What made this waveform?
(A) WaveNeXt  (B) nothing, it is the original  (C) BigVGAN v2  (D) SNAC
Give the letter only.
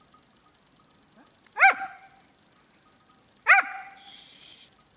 B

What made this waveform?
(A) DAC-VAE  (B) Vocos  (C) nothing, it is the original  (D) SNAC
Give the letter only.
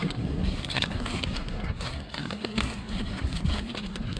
D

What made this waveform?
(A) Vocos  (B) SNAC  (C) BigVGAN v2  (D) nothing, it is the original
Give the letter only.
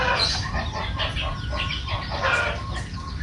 D